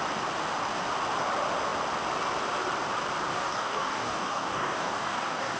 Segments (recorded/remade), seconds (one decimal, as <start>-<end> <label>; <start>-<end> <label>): 0.0-3.3 recorded; 3.3-5.6 remade